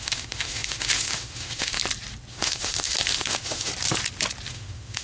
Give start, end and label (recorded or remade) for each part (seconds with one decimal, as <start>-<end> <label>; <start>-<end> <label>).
0.0-1.8 remade; 1.8-2.3 recorded; 2.3-3.7 remade; 3.7-4.5 recorded; 4.5-5.0 remade